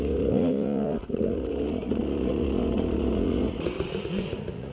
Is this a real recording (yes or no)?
no